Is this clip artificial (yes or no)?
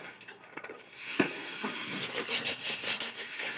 yes